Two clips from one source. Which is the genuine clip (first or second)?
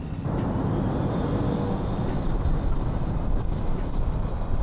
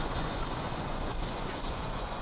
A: first